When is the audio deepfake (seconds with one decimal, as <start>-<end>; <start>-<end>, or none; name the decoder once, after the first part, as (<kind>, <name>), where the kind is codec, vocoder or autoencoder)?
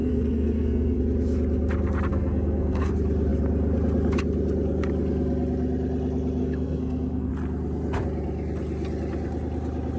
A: 0.0-1.0 (codec, SNAC); 2.1-2.9; 6.4-7.3